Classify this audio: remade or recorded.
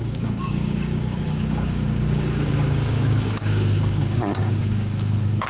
remade